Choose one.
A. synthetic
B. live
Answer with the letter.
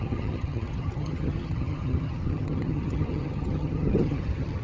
A